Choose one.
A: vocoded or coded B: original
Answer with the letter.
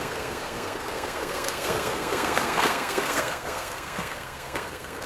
A